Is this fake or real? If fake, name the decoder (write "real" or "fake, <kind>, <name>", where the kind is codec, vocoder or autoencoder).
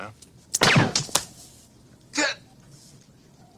real